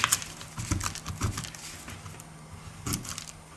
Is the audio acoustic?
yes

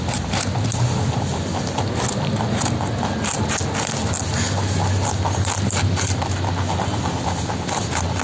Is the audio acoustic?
yes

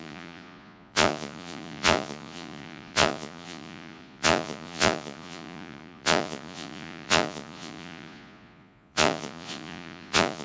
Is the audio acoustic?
no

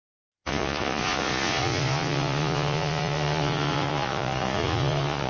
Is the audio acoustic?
no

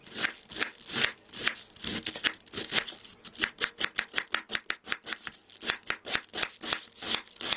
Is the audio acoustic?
yes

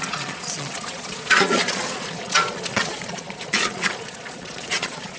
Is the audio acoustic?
no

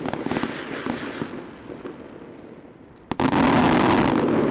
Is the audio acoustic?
yes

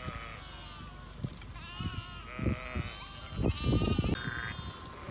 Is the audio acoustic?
yes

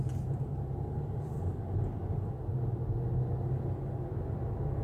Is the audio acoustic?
yes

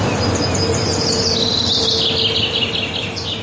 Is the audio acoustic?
yes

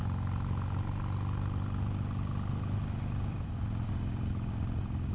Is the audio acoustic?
yes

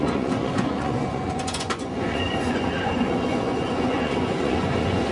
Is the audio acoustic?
no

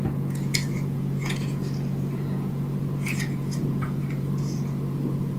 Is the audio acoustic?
no